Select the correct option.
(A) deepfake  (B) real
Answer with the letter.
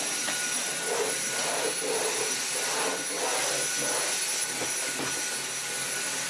B